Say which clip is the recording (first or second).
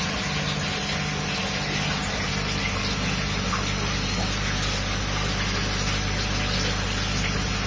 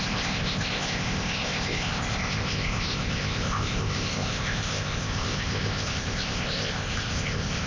first